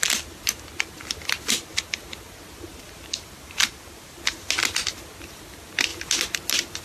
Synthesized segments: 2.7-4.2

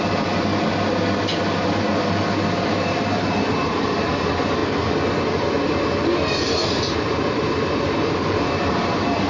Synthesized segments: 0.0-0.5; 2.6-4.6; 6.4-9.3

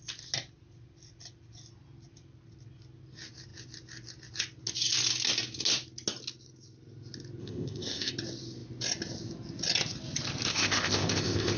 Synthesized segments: 7.4-8.1; 10.5-11.6